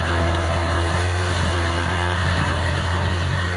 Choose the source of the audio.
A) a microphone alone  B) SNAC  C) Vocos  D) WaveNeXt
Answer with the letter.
B